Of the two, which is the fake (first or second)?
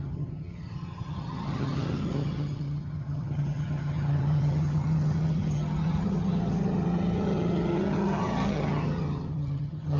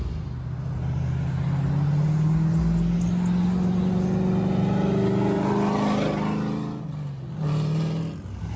first